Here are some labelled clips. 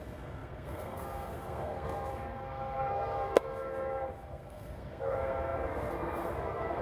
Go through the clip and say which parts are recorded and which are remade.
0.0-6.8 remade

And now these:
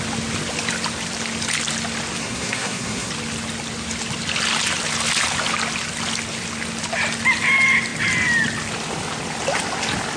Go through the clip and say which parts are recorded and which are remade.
0.0-2.2 recorded; 2.2-3.1 remade; 3.1-10.2 recorded

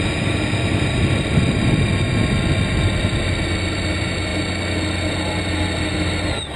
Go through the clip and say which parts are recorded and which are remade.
0.0-6.6 recorded

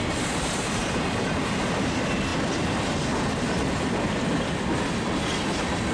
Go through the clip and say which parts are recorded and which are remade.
0.0-5.9 recorded

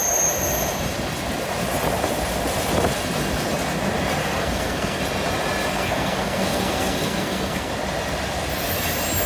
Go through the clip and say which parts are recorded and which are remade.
0.0-4.2 recorded; 4.2-5.0 remade; 5.0-5.7 recorded; 5.7-7.7 remade; 7.7-9.3 recorded